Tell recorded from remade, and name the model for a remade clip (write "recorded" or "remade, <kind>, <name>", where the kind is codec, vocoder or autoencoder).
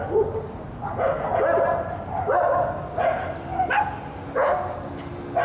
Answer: recorded